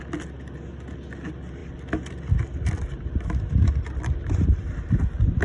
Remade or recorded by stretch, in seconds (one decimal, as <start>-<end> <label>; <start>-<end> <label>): 0.0-5.4 recorded